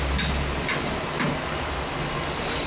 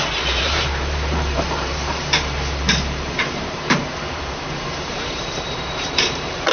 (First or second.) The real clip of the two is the first